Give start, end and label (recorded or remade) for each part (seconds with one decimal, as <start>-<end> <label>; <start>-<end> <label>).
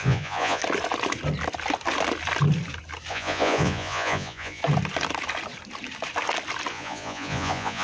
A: 0.0-0.6 remade; 0.6-3.1 recorded; 3.1-4.6 remade; 4.6-6.7 recorded; 6.7-7.8 remade